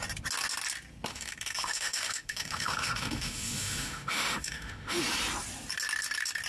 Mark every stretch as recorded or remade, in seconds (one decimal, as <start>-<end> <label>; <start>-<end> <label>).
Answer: 0.0-1.1 recorded; 1.1-5.0 remade; 5.0-6.5 recorded